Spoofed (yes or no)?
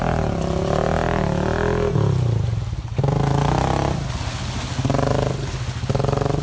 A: no